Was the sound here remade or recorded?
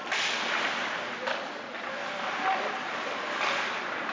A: recorded